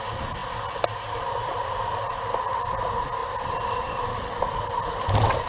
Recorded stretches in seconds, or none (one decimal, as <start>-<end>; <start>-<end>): none